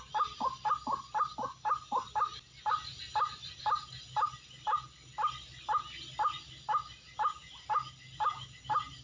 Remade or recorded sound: recorded